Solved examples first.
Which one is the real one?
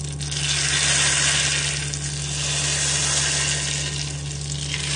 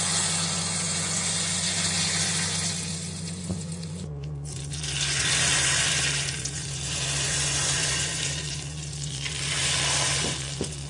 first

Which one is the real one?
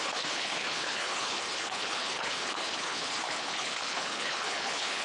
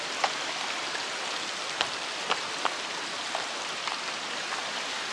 second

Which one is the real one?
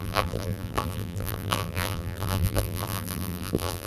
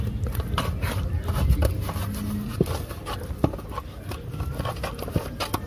second